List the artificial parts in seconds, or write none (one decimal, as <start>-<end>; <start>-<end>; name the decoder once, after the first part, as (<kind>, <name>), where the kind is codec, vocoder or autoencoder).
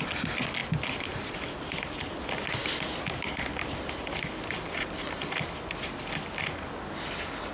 0.6-1.6 (vocoder, BigVGAN v2)